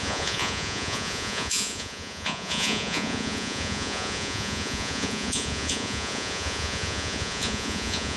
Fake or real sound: fake